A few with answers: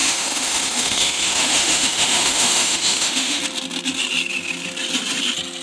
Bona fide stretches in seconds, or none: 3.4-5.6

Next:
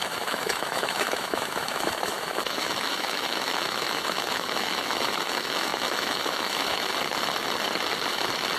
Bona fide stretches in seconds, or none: 6.9-8.6

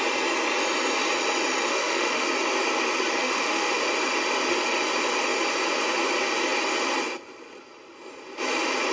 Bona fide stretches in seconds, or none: 0.0-1.7; 2.3-3.2; 3.8-8.9

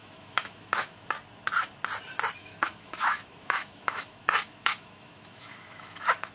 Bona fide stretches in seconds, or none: 1.1-2.4

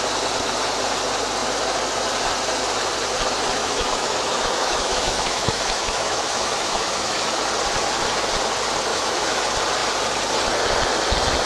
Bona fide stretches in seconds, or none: 0.0-3.6; 7.4-8.9; 9.4-11.5

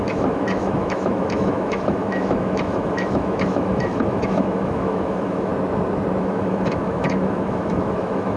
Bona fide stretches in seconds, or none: 5.5-6.2

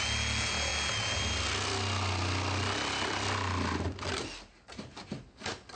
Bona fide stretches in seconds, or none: 0.0-5.8

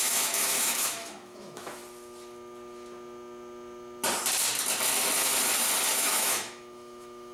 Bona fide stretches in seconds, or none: 1.8-5.9